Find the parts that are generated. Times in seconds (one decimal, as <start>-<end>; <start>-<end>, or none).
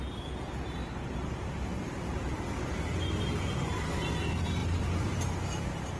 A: 1.7-2.7; 4.6-5.2